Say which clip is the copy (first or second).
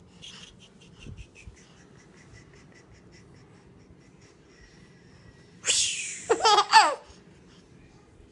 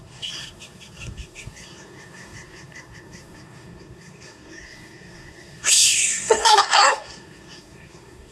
second